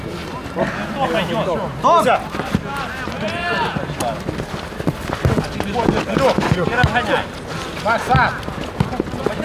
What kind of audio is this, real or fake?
real